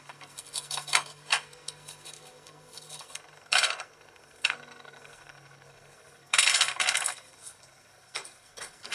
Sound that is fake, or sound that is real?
fake